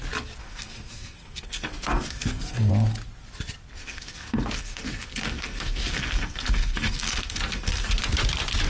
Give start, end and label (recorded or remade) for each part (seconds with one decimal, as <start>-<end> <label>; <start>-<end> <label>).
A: 0.0-0.4 recorded; 0.4-2.7 remade; 2.7-3.8 recorded; 3.8-8.0 remade; 8.0-8.7 recorded